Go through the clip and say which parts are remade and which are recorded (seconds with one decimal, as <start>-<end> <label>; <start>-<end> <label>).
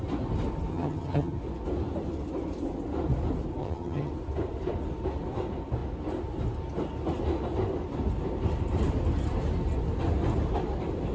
0.0-0.7 recorded; 0.7-1.4 remade; 1.4-3.6 recorded; 3.6-4.1 remade; 4.1-11.1 recorded